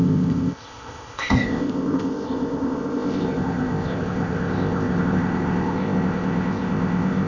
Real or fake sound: fake